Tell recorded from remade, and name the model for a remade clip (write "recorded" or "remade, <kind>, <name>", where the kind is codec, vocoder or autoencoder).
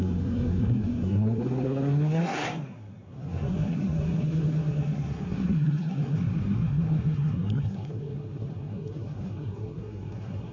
remade, codec, SNAC